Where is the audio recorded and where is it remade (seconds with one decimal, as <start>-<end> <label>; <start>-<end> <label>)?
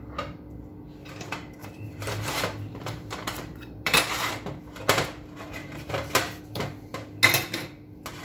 0.0-1.6 recorded; 1.6-4.3 remade; 4.3-5.6 recorded; 5.6-6.4 remade; 6.4-8.2 recorded